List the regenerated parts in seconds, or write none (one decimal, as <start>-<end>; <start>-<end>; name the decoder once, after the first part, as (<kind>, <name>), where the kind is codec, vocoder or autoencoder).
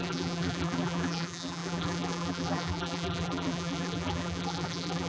0.0-5.1 (vocoder, BigVGAN v2)